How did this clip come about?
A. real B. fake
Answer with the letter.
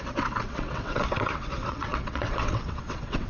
B